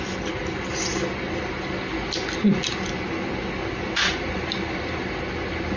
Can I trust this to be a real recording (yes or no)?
yes